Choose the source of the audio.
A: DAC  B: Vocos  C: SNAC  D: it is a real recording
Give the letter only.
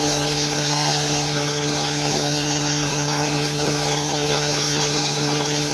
C